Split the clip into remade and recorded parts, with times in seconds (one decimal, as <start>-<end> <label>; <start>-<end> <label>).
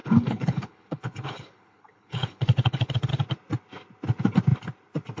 0.0-3.1 remade; 3.1-5.2 recorded